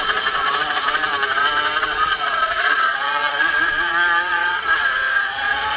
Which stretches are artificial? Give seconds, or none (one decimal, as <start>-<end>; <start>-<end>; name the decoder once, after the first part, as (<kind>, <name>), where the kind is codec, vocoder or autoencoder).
0.0-1.1 (vocoder, Vocos); 1.8-5.8